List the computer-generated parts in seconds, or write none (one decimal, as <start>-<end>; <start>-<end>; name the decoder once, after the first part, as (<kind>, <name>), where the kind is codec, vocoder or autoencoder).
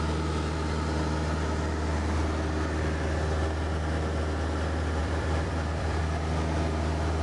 5.0-6.0 (vocoder, BigVGAN v2)